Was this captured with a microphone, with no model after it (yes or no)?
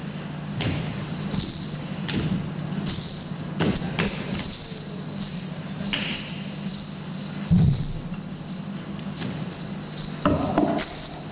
yes